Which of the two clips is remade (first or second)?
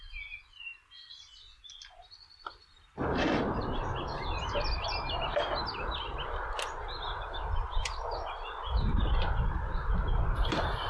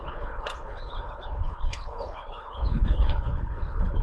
second